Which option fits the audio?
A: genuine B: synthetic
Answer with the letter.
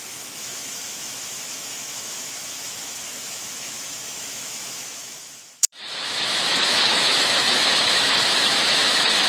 B